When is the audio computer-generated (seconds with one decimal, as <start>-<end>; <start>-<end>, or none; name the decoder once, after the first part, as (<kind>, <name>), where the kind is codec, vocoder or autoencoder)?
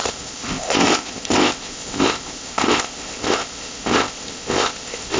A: 0.0-5.2 (codec, ZipCodec)